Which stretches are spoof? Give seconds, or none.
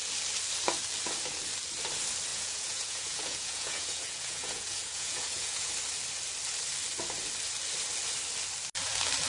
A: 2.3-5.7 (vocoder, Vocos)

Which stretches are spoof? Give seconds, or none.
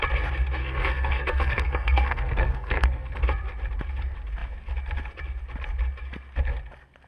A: 0.6-3.2 (codec, SNAC)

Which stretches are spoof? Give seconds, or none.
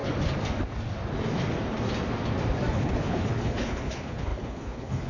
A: 2.7-5.1 (codec, HILCodec)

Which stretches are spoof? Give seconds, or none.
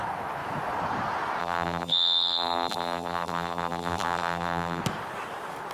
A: 1.4-4.8 (vocoder, BigVGAN v2)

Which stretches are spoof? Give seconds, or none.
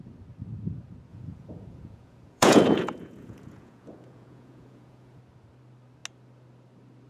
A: 1.1-5.2 (vocoder, Vocos)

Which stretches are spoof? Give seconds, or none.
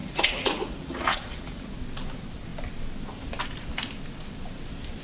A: 0.0-1.8 (vocoder, Vocos)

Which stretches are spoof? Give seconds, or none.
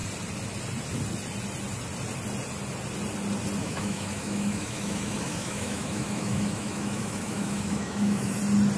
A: 3.6-8.4 (autoencoder, DAC-VAE)